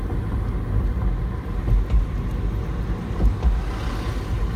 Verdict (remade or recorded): recorded